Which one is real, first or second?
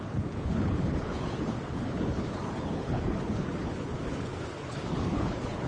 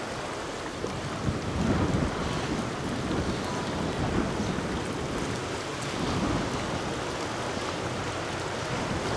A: second